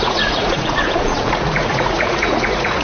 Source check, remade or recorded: remade